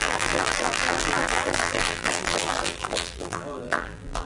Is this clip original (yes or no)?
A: no